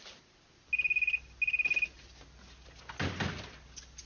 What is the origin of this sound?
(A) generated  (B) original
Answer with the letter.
B